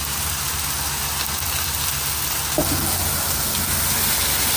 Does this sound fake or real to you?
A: real